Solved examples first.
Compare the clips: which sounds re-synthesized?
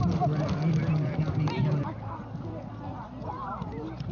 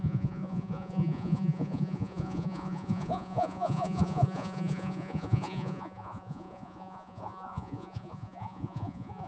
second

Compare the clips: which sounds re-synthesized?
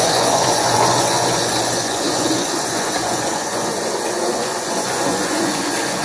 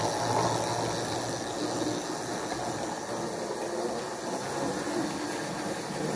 first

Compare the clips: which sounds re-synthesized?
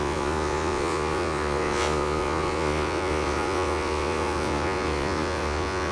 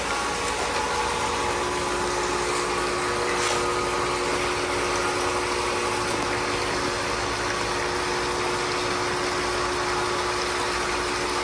first